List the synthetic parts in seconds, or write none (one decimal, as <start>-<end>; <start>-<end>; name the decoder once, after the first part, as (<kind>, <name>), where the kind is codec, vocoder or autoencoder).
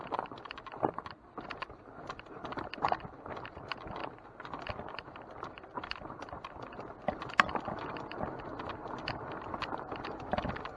none